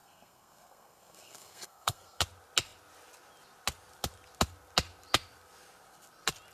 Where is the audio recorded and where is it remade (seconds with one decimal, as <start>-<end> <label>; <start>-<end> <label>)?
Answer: 0.0-2.2 remade; 2.2-6.5 recorded

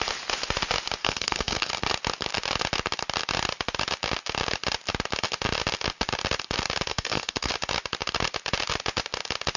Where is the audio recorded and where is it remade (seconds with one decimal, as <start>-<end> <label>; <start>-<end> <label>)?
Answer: 0.0-1.0 recorded; 1.0-1.7 remade; 1.7-6.9 recorded; 6.9-7.5 remade; 7.5-9.6 recorded

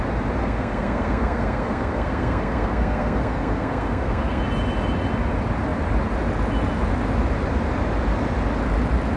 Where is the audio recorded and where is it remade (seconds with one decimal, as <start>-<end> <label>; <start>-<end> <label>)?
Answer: 0.0-0.4 recorded; 0.4-4.4 remade; 4.4-9.2 recorded

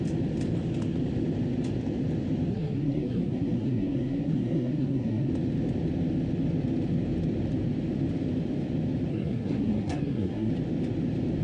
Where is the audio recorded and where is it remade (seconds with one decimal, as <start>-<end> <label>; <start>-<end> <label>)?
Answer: 0.0-2.5 recorded; 2.5-5.3 remade; 5.3-9.1 recorded; 9.1-10.5 remade; 10.5-11.4 recorded

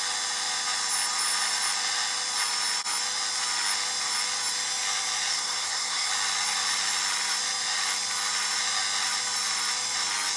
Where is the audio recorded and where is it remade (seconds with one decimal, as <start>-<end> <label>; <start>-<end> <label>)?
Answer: 0.0-5.3 recorded; 5.3-6.1 remade; 6.1-10.4 recorded